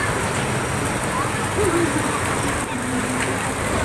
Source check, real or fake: real